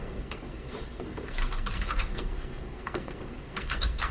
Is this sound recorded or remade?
remade